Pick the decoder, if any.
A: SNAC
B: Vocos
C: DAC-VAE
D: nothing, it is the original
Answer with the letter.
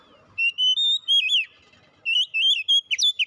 D